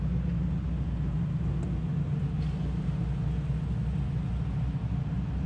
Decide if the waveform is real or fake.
real